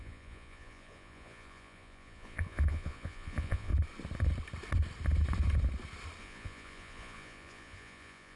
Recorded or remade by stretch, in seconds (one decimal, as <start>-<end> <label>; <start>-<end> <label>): 0.0-3.7 remade; 3.7-6.2 recorded; 6.2-8.4 remade